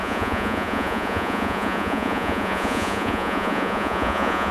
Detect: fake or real fake